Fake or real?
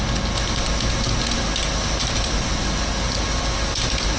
real